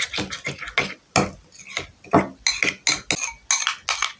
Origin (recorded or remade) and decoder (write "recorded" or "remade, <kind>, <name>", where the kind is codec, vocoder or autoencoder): recorded